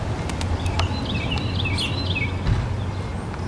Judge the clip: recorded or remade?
recorded